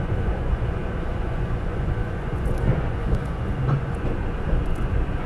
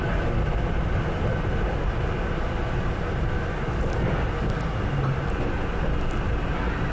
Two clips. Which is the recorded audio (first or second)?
second